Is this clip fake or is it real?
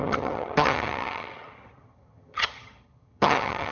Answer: fake